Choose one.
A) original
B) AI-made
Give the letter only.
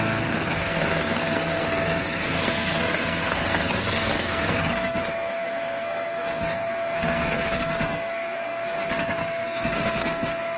B